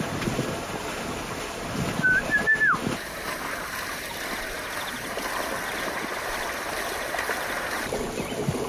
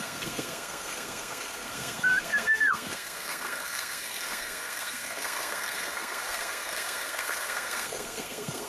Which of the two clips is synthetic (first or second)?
second